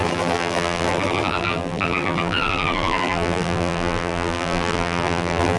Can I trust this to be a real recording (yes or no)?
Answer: no